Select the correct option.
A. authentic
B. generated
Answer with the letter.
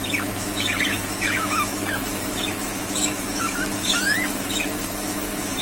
B